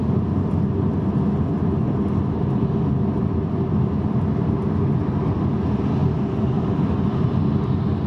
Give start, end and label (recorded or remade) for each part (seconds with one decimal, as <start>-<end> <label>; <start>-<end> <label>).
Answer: 0.0-6.0 recorded; 6.0-7.1 remade; 7.1-8.1 recorded